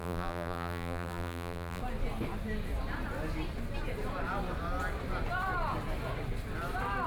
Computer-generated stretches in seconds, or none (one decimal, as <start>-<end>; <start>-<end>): 0.0-1.8